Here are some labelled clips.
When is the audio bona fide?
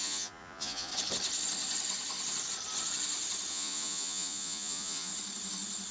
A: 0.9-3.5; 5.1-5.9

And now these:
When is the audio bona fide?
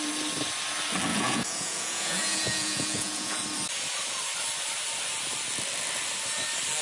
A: 0.0-1.1; 3.4-6.8